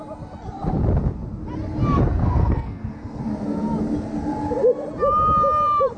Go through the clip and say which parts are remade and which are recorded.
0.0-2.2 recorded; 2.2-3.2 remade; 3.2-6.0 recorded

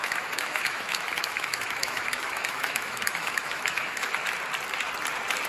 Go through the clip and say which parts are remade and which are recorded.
0.0-4.1 remade; 4.1-5.5 recorded

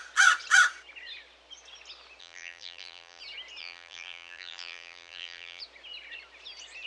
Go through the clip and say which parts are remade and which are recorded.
0.0-2.2 recorded; 2.2-3.2 remade; 3.2-3.6 recorded; 3.6-5.6 remade; 5.6-6.9 recorded

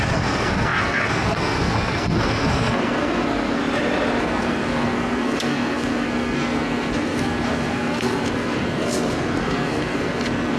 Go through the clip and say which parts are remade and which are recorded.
0.0-3.6 remade; 3.6-4.2 recorded; 4.2-10.6 remade

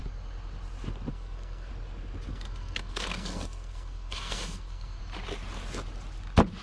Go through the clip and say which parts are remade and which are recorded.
0.0-1.1 recorded; 1.1-1.7 remade; 1.7-2.3 recorded; 2.3-5.0 remade; 5.0-6.6 recorded

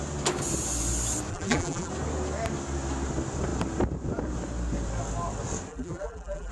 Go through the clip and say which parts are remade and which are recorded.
0.0-1.3 recorded; 1.3-1.9 remade; 1.9-5.7 recorded; 5.7-6.5 remade